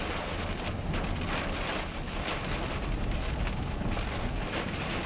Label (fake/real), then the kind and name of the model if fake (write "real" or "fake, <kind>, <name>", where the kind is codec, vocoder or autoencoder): real